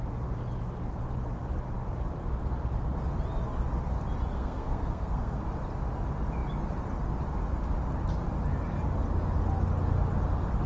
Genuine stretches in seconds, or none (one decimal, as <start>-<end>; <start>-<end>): 0.0-4.3; 5.4-10.7